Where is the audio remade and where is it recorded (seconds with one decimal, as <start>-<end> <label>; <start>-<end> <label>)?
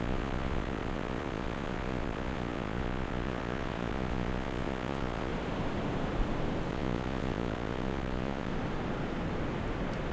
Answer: 0.0-5.3 remade; 5.3-6.7 recorded; 6.7-8.5 remade; 8.5-10.1 recorded